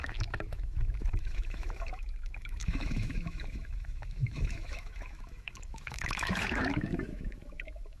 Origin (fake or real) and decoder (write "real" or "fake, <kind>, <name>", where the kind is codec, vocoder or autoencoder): fake, autoencoder, DAC-VAE